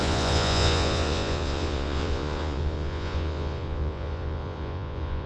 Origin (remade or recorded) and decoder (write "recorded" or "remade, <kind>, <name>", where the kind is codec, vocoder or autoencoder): remade, vocoder, Vocos